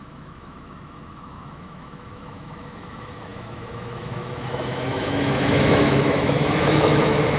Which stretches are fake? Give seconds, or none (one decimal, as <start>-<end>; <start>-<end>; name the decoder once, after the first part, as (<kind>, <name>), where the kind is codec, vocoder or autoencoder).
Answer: 0.0-7.4 (autoencoder, DAC-VAE)